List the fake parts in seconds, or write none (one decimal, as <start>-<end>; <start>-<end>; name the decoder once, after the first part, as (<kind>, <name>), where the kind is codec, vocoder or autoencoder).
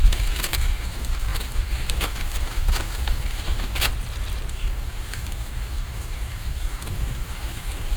0.0-3.9 (codec, DAC); 4.5-8.0